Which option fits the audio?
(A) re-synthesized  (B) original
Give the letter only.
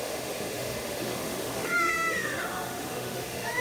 A